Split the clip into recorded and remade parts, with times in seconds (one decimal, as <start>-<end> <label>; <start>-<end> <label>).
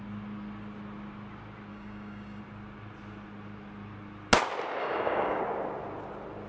0.0-1.7 recorded; 1.7-2.4 remade; 2.4-4.8 recorded; 4.8-5.4 remade; 5.4-6.5 recorded